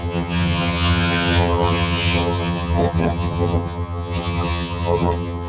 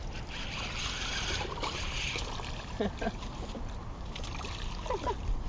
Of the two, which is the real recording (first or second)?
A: second